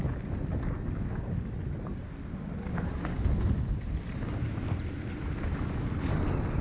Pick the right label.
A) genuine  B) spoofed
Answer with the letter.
A